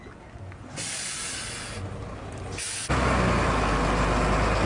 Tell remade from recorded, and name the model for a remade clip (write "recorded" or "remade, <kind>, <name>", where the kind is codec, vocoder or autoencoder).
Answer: recorded